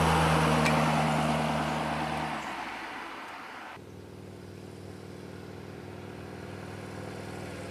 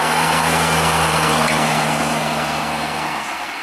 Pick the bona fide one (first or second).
first